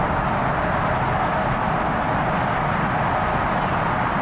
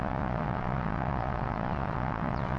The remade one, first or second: second